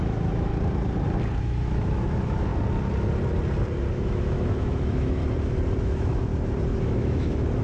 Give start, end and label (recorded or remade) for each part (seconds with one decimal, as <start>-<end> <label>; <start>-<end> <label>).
0.0-0.5 remade; 0.5-1.4 recorded; 1.4-2.5 remade; 2.5-3.9 recorded; 3.9-5.2 remade; 5.2-5.8 recorded; 5.8-6.3 remade; 6.3-6.8 recorded; 6.8-7.6 remade